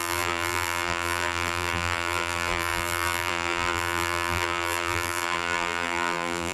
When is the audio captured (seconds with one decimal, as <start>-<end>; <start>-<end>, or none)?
none